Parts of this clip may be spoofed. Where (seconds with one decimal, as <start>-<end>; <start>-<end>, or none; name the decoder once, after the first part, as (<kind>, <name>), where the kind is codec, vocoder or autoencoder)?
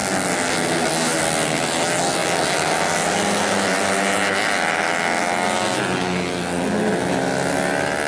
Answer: none